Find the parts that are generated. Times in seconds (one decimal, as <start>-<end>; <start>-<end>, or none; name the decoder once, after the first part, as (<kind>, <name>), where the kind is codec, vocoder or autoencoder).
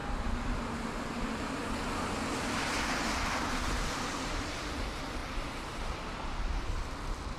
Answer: 3.4-6.8 (vocoder, BigVGAN v2)